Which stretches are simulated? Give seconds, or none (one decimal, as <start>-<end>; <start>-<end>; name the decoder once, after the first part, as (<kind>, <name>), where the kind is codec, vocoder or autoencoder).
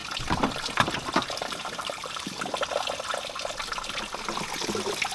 1.2-2.5 (vocoder, BigVGAN v2)